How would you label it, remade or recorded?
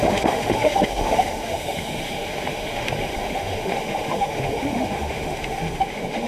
remade